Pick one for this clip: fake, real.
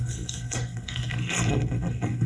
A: fake